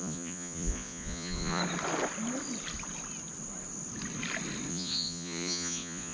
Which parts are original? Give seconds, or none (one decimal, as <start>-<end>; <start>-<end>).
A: 1.6-4.7